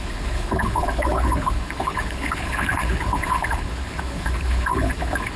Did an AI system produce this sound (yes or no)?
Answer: yes